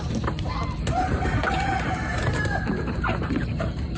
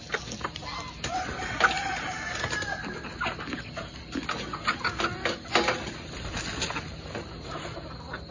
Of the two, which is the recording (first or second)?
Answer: second